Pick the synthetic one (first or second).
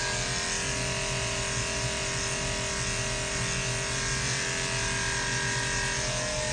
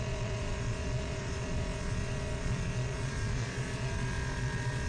second